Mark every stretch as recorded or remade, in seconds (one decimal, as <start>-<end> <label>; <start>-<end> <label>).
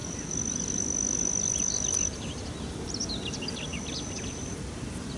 0.0-3.0 remade; 3.0-3.7 recorded; 3.7-5.2 remade